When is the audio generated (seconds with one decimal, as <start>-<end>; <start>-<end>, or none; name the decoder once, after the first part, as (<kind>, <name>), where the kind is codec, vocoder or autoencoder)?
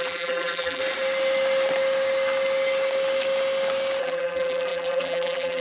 0.0-0.8 (vocoder, BigVGAN v2); 4.0-5.6